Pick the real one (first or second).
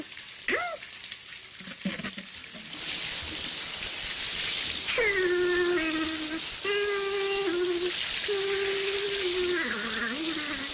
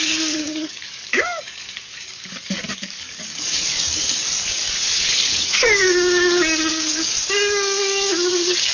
first